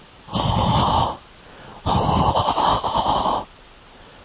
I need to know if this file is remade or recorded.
recorded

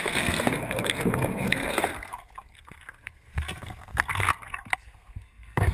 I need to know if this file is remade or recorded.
remade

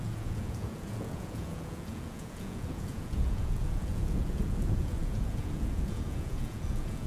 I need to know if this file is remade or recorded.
remade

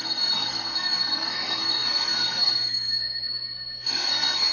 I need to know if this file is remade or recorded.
remade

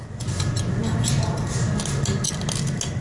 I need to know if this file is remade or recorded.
recorded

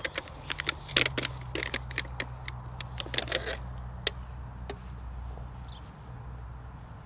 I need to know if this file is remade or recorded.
recorded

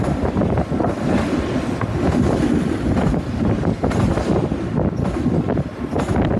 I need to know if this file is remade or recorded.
recorded